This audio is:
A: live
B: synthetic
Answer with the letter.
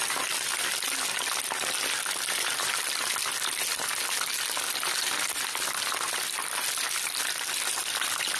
A